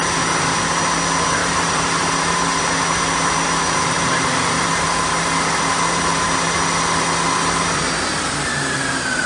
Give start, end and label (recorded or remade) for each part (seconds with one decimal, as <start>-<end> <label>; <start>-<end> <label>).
0.0-1.4 recorded; 1.4-2.6 remade; 2.6-9.3 recorded